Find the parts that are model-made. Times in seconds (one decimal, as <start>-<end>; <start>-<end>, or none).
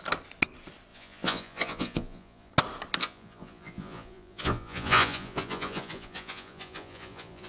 0.9-2.5; 3.0-7.5